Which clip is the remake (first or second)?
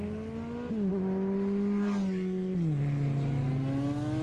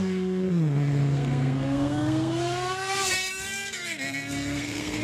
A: second